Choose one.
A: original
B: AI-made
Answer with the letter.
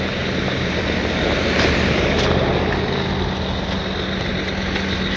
A